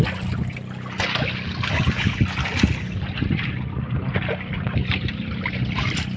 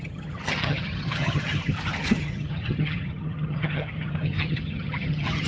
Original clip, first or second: first